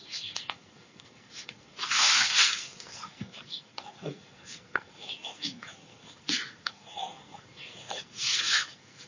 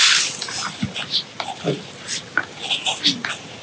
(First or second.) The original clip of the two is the second